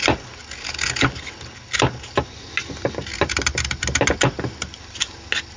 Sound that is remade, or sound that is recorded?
recorded